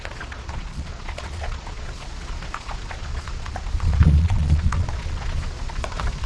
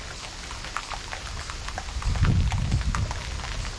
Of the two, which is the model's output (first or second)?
first